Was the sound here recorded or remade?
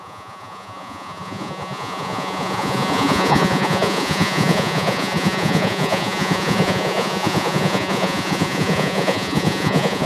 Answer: remade